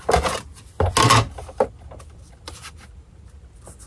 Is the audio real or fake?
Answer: real